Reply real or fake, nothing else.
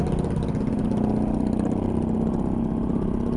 real